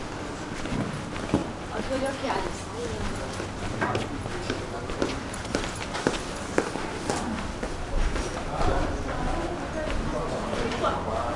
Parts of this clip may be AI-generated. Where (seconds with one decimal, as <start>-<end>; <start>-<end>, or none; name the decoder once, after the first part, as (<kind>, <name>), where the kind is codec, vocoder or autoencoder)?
1.4-2.3 (vocoder, BigVGAN v2); 4.2-9.2; 10.1-10.7